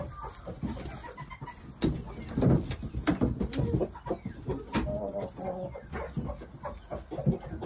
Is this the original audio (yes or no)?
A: yes